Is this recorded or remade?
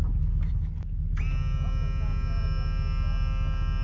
recorded